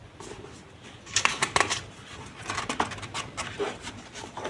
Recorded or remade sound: recorded